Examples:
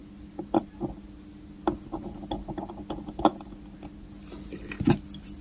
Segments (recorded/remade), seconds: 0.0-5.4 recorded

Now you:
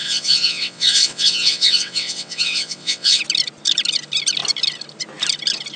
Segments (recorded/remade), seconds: 0.0-3.2 remade; 3.2-5.8 recorded